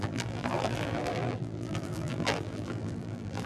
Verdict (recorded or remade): remade